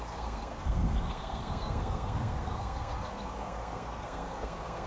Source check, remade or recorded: remade